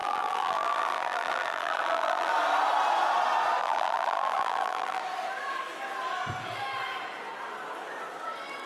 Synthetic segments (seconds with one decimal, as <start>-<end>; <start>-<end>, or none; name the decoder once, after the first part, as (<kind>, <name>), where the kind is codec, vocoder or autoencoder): 0.0-2.3 (vocoder, BigVGAN v2); 3.6-5.0